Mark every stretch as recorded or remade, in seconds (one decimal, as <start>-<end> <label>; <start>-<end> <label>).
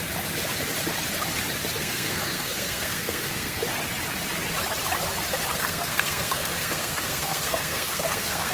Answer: 0.0-1.8 recorded; 1.8-3.6 remade; 3.6-5.5 recorded; 5.5-8.5 remade